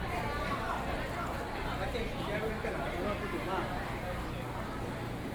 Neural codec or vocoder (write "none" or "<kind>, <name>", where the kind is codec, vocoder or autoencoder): none